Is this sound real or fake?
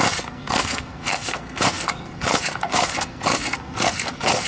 fake